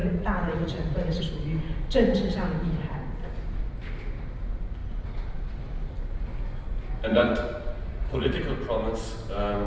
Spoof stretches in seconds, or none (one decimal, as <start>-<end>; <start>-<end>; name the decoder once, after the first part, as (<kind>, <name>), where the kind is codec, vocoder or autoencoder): 0.0-1.2 (vocoder, Vocos); 7.1-8.4